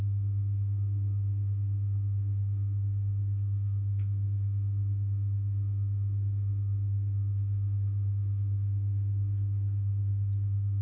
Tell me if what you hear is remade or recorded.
remade